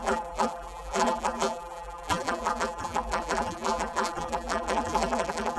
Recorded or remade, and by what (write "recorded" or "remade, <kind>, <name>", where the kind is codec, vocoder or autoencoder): remade, vocoder, BigVGAN v2